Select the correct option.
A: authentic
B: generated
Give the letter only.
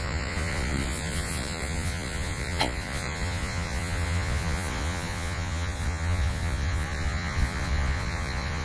B